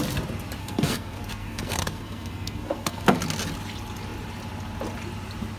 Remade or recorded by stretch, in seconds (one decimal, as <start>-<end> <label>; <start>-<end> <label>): 0.0-0.6 recorded; 0.6-3.2 remade; 3.2-5.6 recorded